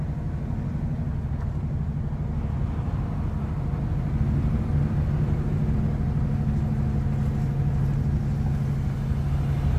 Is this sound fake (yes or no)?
no